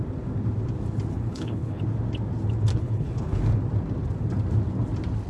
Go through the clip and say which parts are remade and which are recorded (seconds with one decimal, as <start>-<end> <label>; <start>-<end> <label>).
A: 0.0-1.1 recorded; 1.1-1.8 remade; 1.8-2.7 recorded; 2.7-3.4 remade; 3.4-5.3 recorded